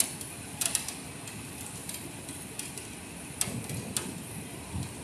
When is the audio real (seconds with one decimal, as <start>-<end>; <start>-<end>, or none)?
0.0-5.0